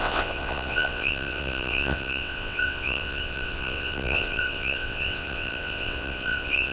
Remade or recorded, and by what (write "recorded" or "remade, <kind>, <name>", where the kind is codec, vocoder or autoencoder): remade, vocoder, WaveNeXt